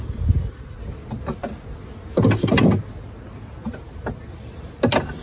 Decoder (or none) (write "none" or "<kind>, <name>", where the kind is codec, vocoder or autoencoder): none